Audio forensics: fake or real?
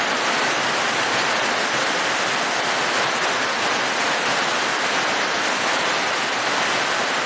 real